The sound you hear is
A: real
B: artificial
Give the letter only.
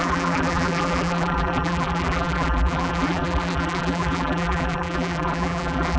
B